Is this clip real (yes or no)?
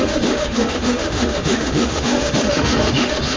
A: no